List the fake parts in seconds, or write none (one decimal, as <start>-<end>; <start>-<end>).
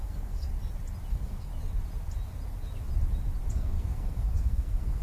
0.0-0.5; 1.1-1.5; 3.5-5.0